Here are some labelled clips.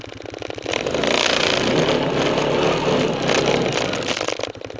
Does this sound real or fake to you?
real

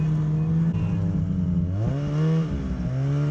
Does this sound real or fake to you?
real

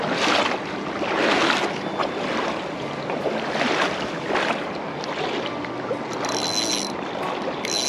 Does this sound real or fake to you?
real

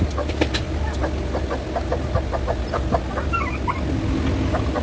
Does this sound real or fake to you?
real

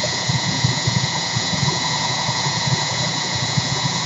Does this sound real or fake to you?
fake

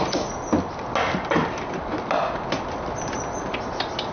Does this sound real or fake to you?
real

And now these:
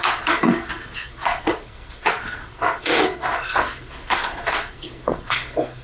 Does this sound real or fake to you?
fake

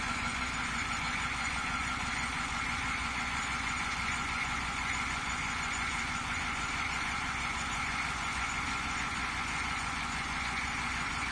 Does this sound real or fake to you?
fake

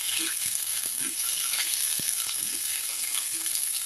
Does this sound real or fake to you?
fake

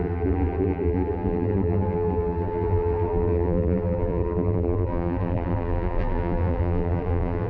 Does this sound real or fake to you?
fake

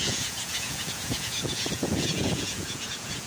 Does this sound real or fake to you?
fake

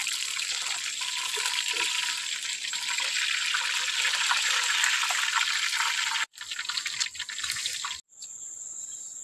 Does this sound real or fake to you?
real